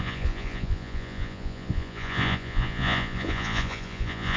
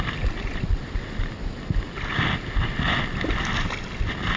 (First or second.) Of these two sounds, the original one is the second